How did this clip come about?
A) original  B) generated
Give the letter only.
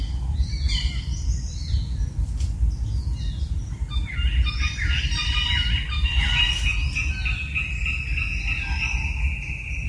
A